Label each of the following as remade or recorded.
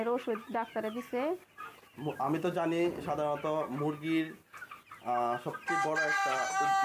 recorded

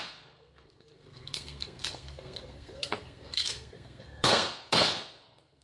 remade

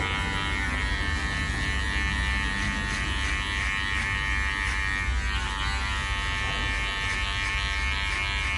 recorded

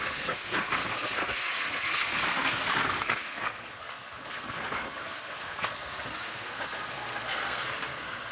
remade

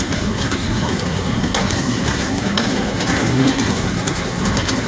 remade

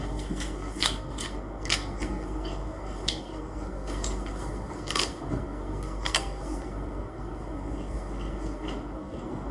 remade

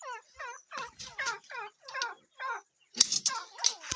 recorded